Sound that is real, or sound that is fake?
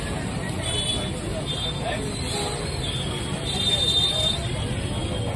real